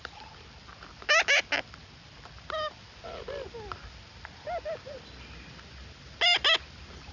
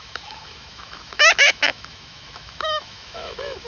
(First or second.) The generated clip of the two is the second